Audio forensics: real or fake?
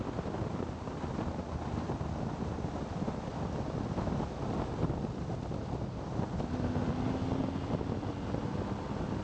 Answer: real